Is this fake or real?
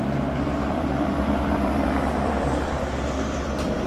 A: fake